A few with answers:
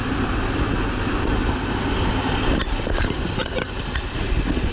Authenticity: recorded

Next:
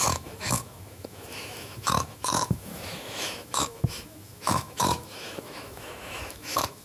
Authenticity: remade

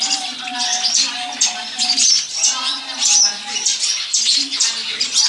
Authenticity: recorded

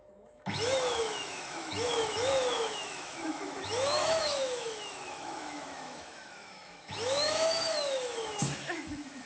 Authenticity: remade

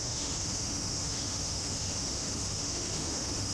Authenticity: remade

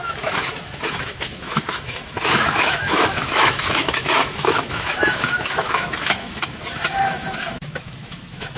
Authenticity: remade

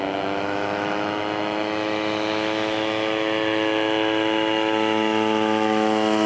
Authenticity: remade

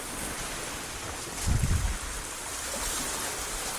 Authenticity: recorded